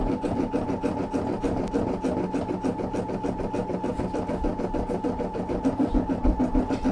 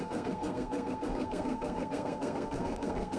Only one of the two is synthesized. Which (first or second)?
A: second